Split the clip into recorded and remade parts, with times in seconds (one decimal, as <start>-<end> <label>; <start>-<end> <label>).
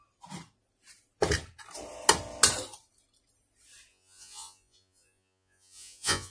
0.0-3.9 recorded; 3.9-6.3 remade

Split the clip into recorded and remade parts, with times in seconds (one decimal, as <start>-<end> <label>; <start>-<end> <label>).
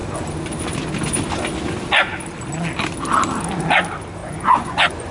0.0-4.2 recorded; 4.2-5.1 remade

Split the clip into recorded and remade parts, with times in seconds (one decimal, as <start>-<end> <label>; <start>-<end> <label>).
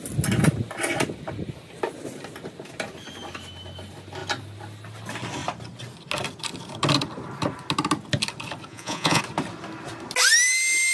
0.0-8.7 recorded; 8.7-9.2 remade; 9.2-10.9 recorded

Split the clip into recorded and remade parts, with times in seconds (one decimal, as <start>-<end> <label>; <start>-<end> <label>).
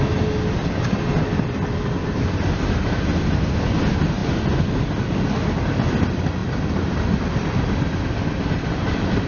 0.0-9.3 recorded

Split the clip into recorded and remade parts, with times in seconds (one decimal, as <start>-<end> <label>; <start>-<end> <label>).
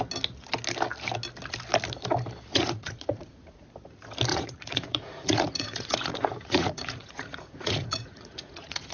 0.0-2.5 recorded; 2.5-3.7 remade; 3.7-4.3 recorded; 4.3-8.9 remade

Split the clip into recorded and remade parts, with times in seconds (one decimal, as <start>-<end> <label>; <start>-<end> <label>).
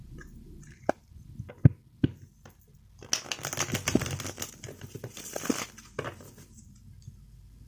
0.0-7.7 recorded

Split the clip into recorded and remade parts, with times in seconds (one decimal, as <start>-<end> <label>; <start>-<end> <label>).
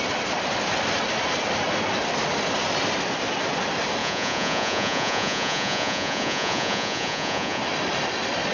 0.0-4.0 recorded; 4.0-7.6 remade; 7.6-8.5 recorded